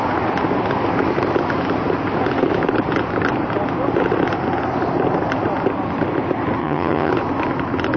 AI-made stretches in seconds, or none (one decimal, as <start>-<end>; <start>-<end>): 6.6-7.1